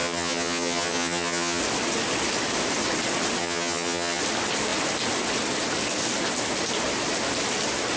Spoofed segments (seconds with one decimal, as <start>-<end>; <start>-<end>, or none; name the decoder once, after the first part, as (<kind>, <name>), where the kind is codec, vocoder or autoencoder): 0.0-1.6 (vocoder, HiFi-GAN); 3.4-4.2